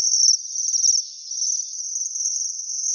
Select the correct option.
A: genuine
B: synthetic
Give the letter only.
A